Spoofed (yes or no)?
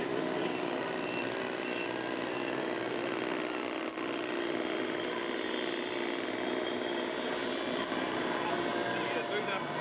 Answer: no